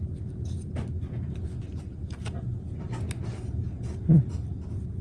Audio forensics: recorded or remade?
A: recorded